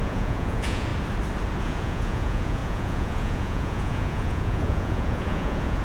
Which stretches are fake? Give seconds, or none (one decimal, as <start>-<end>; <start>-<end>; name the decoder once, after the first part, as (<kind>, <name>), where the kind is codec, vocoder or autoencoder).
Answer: 0.0-0.9 (vocoder, Vocos); 1.6-5.8